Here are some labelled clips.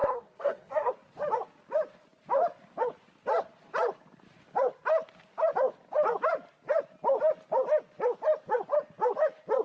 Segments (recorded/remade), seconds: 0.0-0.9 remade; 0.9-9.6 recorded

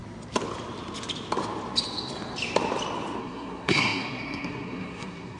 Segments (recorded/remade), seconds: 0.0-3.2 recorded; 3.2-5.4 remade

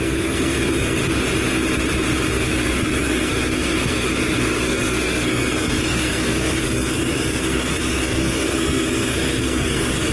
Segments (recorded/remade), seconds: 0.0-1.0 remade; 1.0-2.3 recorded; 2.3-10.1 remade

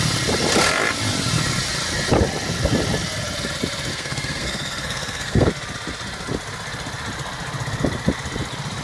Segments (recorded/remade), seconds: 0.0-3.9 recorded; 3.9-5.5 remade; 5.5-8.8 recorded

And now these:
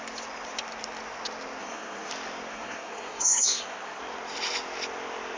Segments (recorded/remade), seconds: 0.0-1.6 recorded; 1.6-2.1 remade; 2.1-2.5 recorded; 2.5-4.0 remade; 4.0-5.4 recorded